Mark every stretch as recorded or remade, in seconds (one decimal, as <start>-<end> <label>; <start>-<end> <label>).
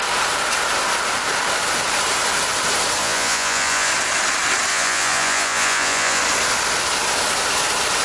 0.0-3.0 recorded; 3.0-3.9 remade; 3.9-4.7 recorded; 4.7-6.2 remade; 6.2-8.0 recorded